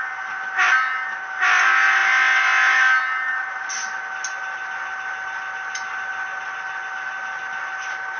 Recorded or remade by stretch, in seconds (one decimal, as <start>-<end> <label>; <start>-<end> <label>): 0.0-8.2 recorded

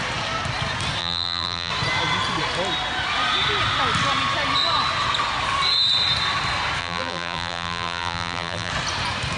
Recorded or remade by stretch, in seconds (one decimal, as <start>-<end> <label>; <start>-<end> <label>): 0.0-1.0 recorded; 1.0-1.7 remade; 1.7-6.8 recorded; 6.8-8.7 remade; 8.7-9.4 recorded

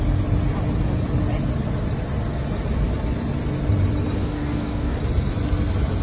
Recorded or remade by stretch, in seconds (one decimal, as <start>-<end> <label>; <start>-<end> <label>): 0.0-4.2 recorded; 4.2-5.0 remade; 5.0-6.0 recorded

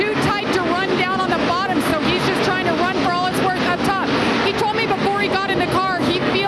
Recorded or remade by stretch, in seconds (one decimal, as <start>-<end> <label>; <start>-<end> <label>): 0.0-6.5 recorded

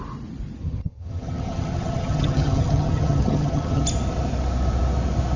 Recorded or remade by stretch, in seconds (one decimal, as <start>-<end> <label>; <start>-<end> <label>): 0.0-0.6 recorded; 0.6-3.8 remade; 3.8-5.4 recorded

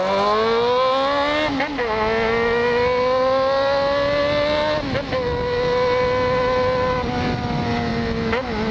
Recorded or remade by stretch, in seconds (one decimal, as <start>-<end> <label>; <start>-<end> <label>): 0.0-8.7 recorded

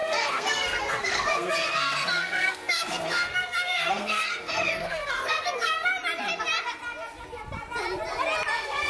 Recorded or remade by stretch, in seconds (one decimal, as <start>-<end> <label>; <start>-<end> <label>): 0.0-5.9 remade; 5.9-8.5 recorded; 8.5-8.9 remade

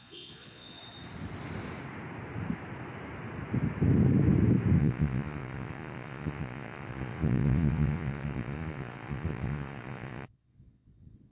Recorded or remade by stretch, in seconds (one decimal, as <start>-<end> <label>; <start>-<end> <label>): 0.0-0.8 remade; 0.8-4.8 recorded; 4.8-11.3 remade